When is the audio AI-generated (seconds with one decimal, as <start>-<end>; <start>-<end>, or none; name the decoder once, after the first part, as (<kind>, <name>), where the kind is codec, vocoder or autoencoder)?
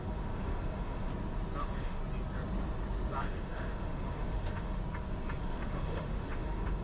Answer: 0.0-1.1 (autoencoder, DAC-VAE); 1.6-2.0; 3.2-4.8; 5.4-6.8